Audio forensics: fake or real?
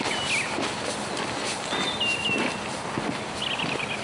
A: real